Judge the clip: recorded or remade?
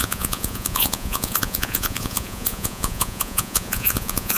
remade